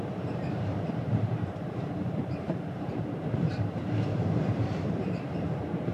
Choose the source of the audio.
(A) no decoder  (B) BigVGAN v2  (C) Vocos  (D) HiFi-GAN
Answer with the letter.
B